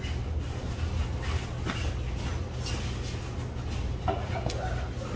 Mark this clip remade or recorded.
recorded